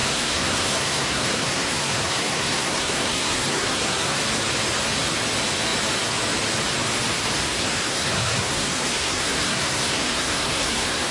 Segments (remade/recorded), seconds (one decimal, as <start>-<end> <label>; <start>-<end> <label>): 0.0-4.2 remade; 4.2-7.4 recorded; 7.4-11.1 remade